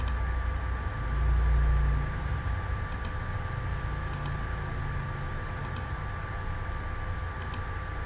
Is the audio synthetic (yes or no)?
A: no